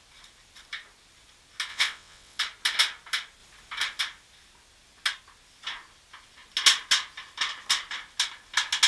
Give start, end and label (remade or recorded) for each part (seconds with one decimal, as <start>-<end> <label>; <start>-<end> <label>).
0.0-1.7 recorded; 1.7-2.4 remade; 2.4-8.9 recorded

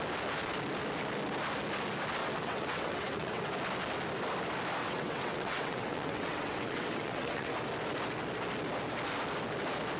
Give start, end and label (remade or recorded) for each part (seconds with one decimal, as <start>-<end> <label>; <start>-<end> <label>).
0.0-2.2 recorded; 2.2-3.4 remade; 3.4-4.8 recorded; 4.8-7.5 remade; 7.5-10.0 recorded